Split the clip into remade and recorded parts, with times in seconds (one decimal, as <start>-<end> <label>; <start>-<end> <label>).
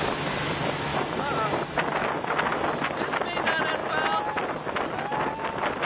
0.0-5.8 recorded